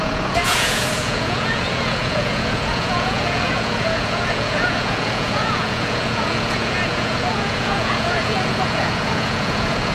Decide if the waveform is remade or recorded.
remade